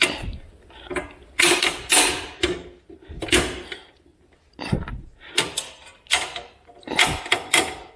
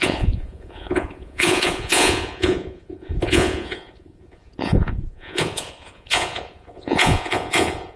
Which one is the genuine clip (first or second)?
first